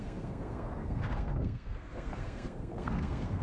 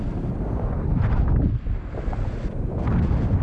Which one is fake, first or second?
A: first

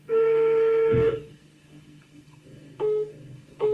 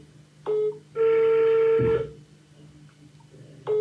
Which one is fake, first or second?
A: first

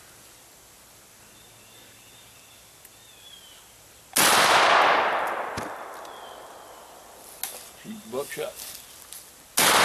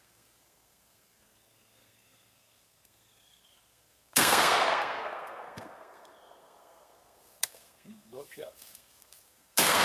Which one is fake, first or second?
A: second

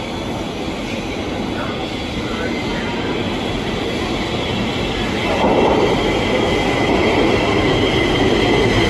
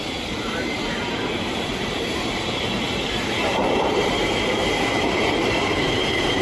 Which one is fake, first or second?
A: second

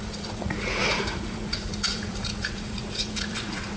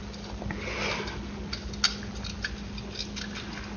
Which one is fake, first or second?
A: first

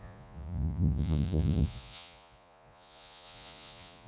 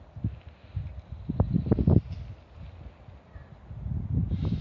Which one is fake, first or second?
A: first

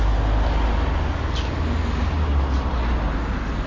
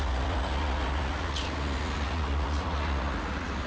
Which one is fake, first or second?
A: second